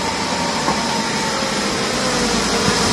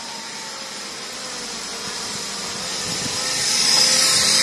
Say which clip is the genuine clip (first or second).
first